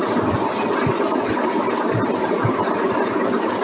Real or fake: real